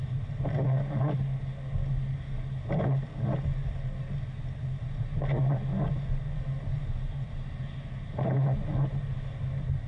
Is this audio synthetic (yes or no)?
no